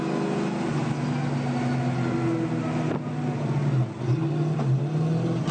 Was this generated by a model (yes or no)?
no